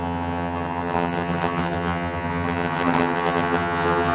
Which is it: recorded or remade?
remade